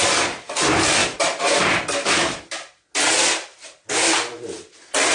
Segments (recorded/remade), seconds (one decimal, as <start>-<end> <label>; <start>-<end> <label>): 0.0-5.1 recorded